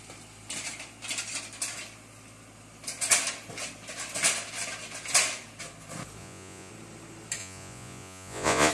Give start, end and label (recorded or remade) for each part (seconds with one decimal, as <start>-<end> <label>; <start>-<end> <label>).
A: 0.0-6.2 recorded; 6.2-6.7 remade; 6.7-7.4 recorded; 7.4-8.7 remade